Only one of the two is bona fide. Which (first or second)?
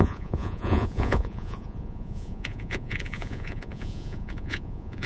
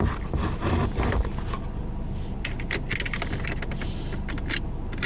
second